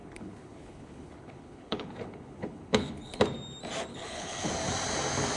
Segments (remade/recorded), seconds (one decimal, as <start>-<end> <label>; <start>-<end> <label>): 0.0-3.2 remade; 3.2-3.9 recorded; 3.9-4.5 remade; 4.5-5.4 recorded